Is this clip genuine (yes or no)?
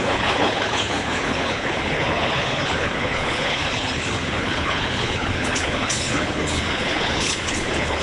no